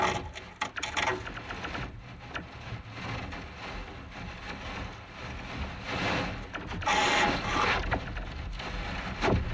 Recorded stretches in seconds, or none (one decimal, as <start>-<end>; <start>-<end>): 0.0-9.5